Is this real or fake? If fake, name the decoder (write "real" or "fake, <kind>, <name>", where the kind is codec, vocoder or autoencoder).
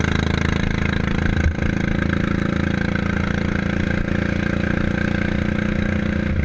real